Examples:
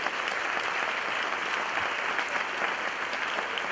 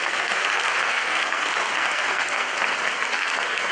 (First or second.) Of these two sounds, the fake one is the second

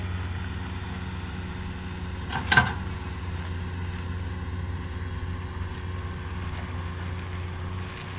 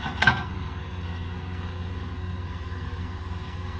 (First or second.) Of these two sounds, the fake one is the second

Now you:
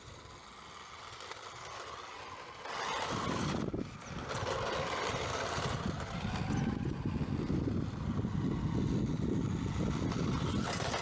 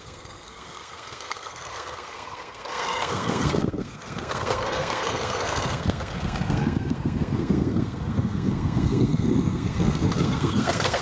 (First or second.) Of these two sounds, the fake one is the second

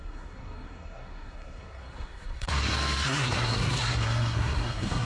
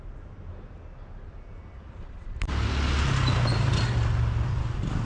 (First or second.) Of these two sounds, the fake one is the first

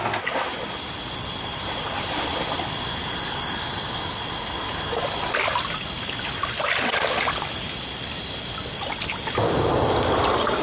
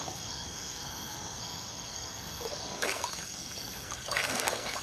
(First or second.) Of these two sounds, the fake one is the second